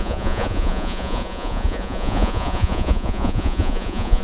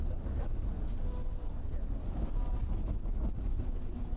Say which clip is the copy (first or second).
first